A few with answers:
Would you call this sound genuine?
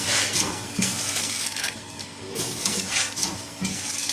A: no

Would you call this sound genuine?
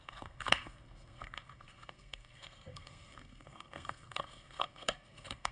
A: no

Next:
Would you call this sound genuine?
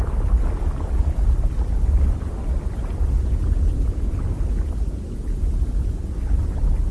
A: yes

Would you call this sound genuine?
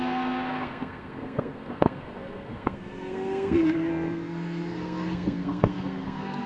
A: no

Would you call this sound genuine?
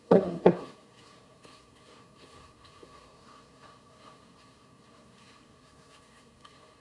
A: no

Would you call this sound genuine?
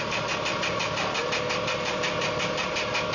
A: yes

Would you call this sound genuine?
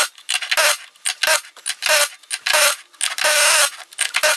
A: yes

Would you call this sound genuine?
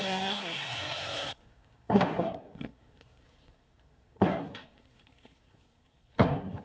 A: no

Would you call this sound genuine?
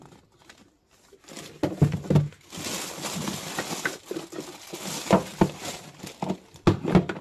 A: yes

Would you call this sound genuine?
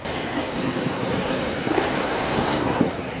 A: no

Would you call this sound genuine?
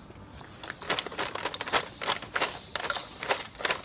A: yes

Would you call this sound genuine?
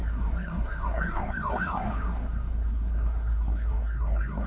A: no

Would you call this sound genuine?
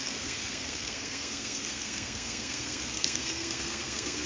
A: no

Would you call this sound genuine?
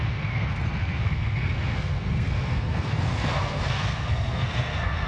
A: no